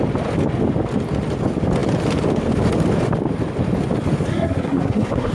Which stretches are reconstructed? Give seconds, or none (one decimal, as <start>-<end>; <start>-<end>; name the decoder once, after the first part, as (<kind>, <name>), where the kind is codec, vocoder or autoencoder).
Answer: 4.3-5.3 (codec, SNAC)